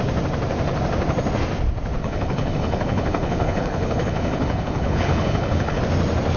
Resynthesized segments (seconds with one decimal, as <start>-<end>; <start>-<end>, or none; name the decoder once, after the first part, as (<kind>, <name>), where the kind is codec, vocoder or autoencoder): 2.0-5.8 (codec, HILCodec)